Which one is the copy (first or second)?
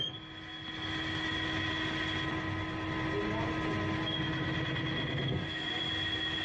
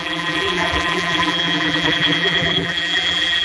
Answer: second